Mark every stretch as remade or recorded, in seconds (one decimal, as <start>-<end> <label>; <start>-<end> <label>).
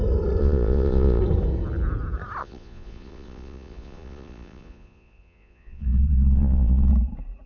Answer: 0.0-0.4 recorded; 0.4-1.2 remade; 1.2-2.4 recorded; 2.4-6.9 remade; 6.9-7.5 recorded